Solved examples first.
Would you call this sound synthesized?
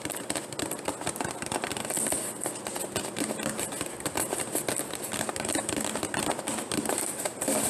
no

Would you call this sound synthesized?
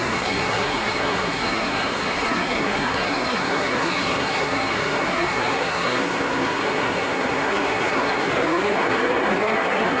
yes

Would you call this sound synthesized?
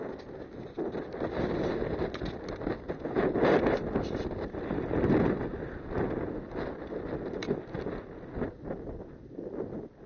no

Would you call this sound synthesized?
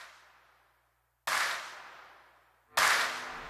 no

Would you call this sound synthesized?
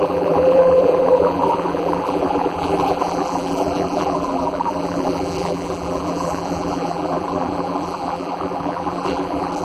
yes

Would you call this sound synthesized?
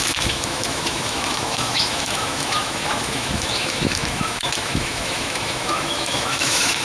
yes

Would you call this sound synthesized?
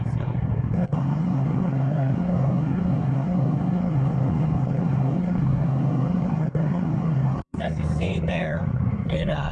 yes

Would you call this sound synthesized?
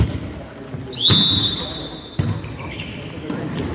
no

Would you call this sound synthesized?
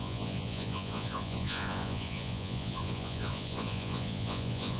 yes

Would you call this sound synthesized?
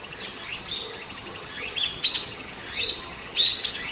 yes